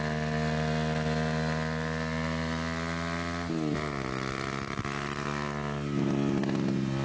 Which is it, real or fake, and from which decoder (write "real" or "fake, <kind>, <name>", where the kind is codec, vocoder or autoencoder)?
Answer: real